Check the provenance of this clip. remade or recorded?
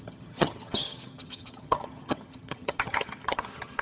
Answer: remade